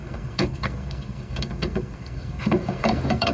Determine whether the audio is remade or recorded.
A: remade